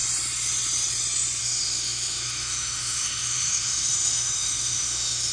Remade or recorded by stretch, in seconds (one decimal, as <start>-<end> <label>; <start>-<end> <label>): 0.0-1.4 recorded; 1.4-5.3 remade